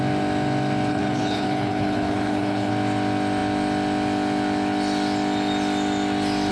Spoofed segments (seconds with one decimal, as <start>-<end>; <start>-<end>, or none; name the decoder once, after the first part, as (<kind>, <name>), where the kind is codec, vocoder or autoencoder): 0.9-2.7 (codec, HILCodec)